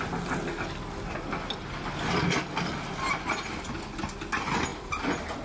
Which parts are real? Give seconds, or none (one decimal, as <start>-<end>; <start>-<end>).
0.0-4.7